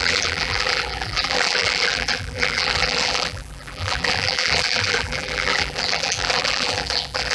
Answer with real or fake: fake